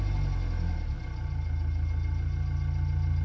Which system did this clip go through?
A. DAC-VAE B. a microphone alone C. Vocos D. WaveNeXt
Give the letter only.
B